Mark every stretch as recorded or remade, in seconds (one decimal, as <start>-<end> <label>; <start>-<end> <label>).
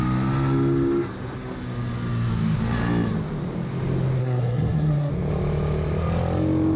0.0-4.2 recorded; 4.2-5.1 remade; 5.1-6.8 recorded